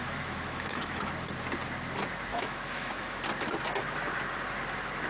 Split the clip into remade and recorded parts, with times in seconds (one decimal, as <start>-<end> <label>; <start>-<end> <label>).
0.0-1.1 remade; 1.1-2.3 recorded; 2.3-3.2 remade; 3.2-5.1 recorded